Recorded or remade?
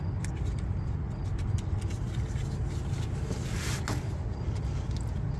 recorded